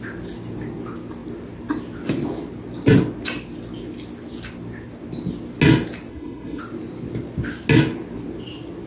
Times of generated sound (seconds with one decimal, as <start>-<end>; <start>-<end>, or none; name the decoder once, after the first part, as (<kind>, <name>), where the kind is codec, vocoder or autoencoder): 6.1-6.6 (codec, SNAC)